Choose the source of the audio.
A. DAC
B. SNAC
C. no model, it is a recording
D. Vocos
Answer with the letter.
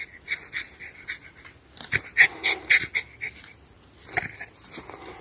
C